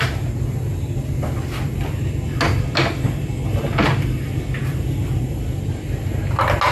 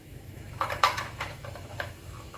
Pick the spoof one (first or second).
second